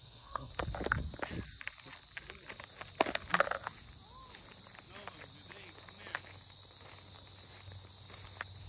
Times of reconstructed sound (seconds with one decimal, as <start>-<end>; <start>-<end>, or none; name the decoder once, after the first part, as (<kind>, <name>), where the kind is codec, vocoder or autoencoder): 0.0-0.5 (codec, SNAC)